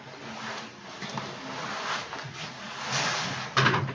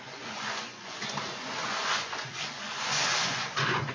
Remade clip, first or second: second